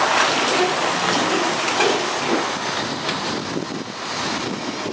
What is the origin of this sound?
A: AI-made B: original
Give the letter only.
B